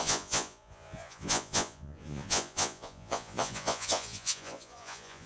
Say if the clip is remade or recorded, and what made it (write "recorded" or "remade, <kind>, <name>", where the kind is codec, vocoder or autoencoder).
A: remade, vocoder, Vocos